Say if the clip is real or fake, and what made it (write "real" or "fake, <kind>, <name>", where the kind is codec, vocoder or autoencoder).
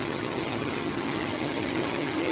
fake, vocoder, HiFi-GAN